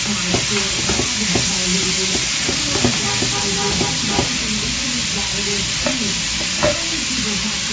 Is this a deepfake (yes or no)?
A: no